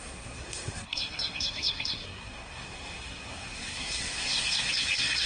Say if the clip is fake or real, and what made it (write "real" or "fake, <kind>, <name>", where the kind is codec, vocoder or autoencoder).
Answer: fake, codec, SNAC